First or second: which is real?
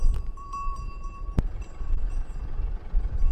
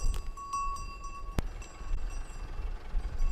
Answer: second